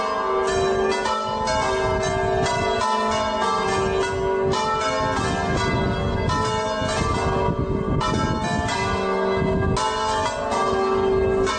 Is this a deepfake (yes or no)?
no